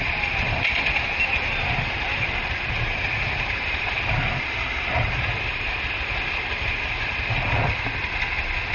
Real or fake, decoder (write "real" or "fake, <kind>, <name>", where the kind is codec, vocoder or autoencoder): real